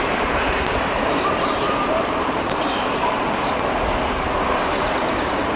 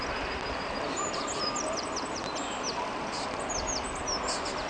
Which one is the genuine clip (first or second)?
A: second